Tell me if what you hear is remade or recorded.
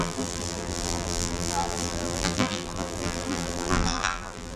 remade